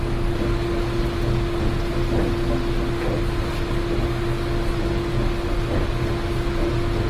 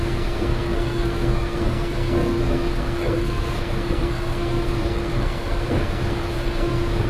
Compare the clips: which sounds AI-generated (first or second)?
second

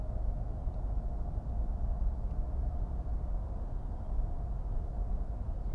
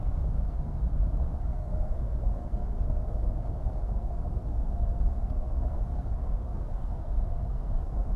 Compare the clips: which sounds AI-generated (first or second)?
second